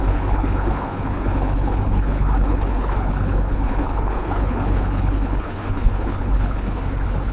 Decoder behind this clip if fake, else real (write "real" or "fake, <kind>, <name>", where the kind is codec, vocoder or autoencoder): fake, codec, HILCodec